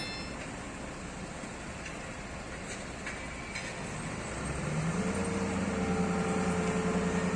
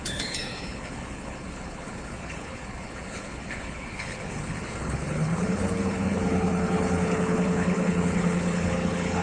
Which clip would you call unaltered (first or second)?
first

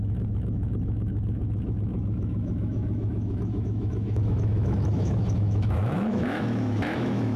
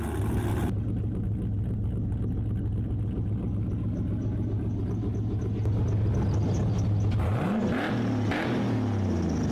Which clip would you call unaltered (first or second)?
second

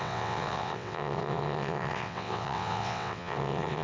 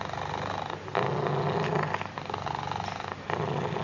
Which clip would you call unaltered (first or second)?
second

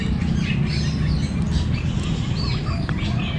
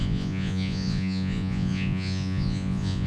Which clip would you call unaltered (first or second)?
first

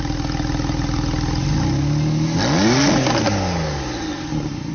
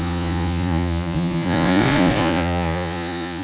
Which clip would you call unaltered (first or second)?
first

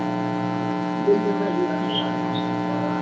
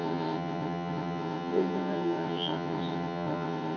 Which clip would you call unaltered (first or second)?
first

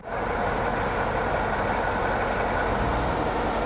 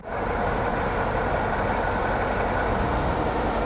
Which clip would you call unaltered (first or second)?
first